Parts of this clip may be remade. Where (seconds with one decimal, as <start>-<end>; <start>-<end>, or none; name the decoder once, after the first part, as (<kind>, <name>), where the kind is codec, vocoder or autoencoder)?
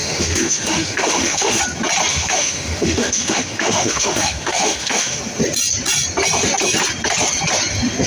0.0-1.6 (autoencoder, DAC-VAE); 2.1-5.2